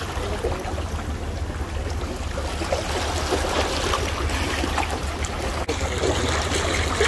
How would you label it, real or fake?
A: real